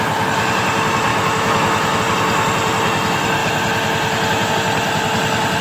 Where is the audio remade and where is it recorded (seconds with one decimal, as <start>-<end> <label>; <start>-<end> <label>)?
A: 0.0-1.1 recorded; 1.1-2.0 remade; 2.0-5.6 recorded